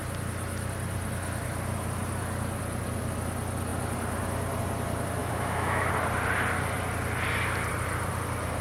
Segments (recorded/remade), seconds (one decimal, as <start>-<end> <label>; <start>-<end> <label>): 0.0-5.2 recorded; 5.2-5.9 remade; 5.9-8.6 recorded